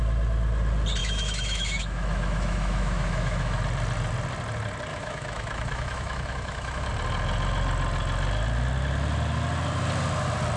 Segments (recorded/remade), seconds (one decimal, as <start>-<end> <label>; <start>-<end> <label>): 0.0-1.0 recorded; 1.0-3.6 remade; 3.6-4.9 recorded; 4.9-6.9 remade; 6.9-10.6 recorded